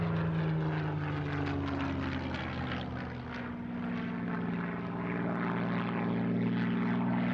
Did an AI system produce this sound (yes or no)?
no